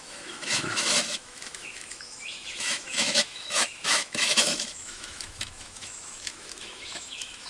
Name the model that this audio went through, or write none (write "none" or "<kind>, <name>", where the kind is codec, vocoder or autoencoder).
autoencoder, DAC-VAE